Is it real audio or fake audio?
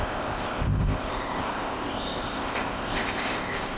fake